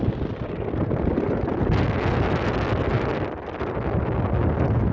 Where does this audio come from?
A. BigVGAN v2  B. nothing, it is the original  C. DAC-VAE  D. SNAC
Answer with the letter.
B